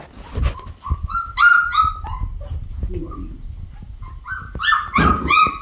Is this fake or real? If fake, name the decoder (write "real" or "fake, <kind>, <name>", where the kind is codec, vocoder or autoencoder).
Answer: real